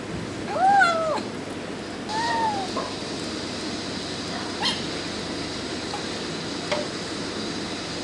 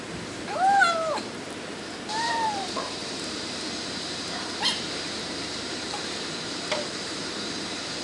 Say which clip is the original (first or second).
first